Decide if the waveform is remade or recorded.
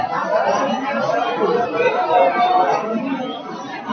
recorded